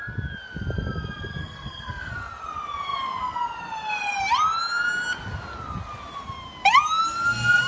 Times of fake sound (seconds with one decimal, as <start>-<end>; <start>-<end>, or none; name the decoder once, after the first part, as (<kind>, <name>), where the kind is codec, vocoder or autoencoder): 1.4-2.1 (codec, SNAC)